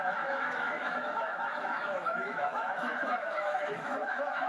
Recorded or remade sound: remade